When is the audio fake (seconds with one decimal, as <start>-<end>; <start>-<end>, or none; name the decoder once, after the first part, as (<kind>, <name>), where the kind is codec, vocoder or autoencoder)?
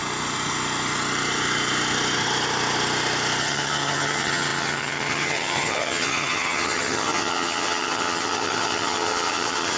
3.4-9.8 (vocoder, HiFi-GAN)